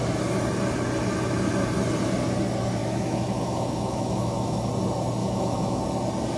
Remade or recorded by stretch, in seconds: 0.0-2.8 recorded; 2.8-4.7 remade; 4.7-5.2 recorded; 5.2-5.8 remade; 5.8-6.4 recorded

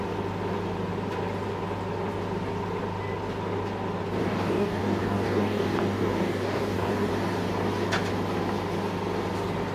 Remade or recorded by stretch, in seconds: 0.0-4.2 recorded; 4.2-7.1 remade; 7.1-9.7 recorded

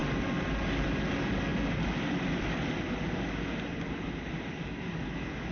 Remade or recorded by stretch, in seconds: 0.0-5.5 recorded

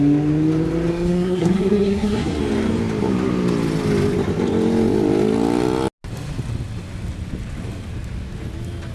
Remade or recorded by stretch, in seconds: 0.0-0.9 recorded; 0.9-2.4 remade; 2.4-8.9 recorded

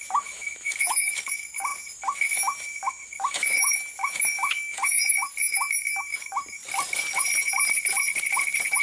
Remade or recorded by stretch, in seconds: 0.0-6.6 remade; 6.6-8.8 recorded

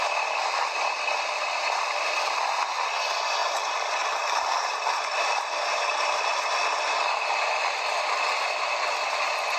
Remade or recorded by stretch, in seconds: 0.0-9.6 recorded

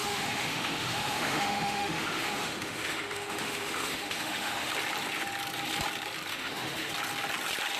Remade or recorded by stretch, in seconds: 0.0-4.7 remade; 4.7-6.3 recorded; 6.3-6.9 remade; 6.9-7.8 recorded